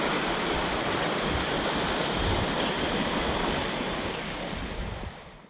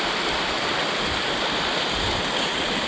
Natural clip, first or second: first